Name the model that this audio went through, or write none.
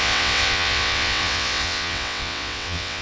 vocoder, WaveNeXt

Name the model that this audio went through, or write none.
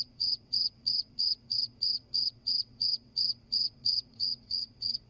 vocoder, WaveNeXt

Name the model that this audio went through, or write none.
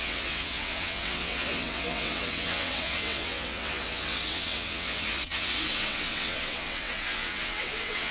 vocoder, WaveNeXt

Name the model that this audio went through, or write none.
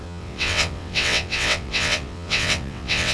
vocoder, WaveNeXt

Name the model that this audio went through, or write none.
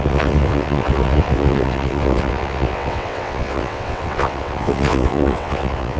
vocoder, WaveNeXt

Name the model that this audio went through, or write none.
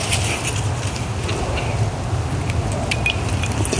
none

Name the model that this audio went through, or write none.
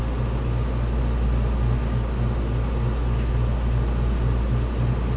none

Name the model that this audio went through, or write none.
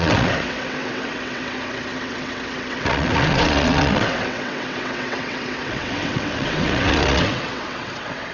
vocoder, WaveNeXt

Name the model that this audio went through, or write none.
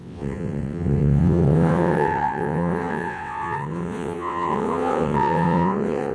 vocoder, WaveNeXt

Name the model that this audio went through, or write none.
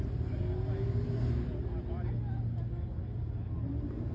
none